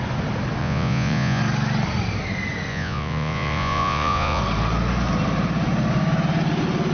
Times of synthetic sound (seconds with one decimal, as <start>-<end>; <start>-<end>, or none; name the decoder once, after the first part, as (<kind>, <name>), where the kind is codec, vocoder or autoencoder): 0.6-1.4 (vocoder, Vocos); 2.7-4.4